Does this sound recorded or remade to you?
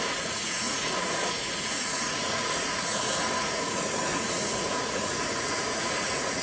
remade